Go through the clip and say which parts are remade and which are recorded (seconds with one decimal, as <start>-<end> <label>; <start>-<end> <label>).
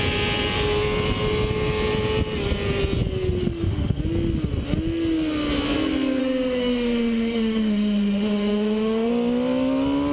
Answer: 0.0-3.4 recorded; 3.4-4.0 remade; 4.0-6.2 recorded; 6.2-9.1 remade; 9.1-10.1 recorded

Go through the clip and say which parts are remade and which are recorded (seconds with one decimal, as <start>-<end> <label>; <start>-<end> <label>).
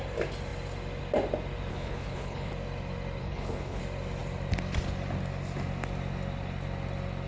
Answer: 0.0-1.7 recorded; 1.7-2.5 remade; 2.5-3.2 recorded; 3.2-3.8 remade; 3.8-7.3 recorded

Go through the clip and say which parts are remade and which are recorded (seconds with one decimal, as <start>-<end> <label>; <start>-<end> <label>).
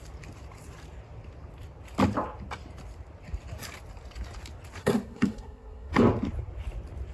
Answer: 0.0-4.8 recorded; 4.8-5.9 remade; 5.9-7.1 recorded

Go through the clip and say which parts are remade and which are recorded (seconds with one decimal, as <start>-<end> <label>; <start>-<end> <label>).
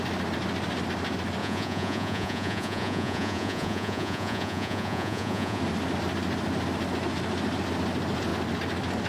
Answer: 0.0-1.4 recorded; 1.4-5.6 remade; 5.6-9.1 recorded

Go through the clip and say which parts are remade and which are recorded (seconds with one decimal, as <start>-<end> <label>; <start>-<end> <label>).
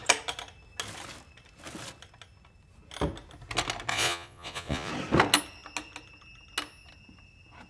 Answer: 0.0-3.9 recorded; 3.9-4.9 remade; 4.9-7.7 recorded